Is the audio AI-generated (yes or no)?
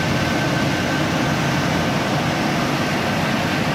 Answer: no